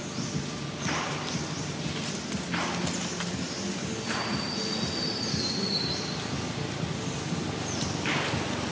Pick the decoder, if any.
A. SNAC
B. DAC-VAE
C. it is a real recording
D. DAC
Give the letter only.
C